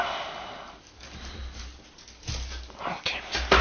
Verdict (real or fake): real